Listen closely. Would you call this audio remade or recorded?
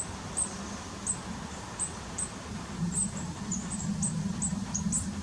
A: remade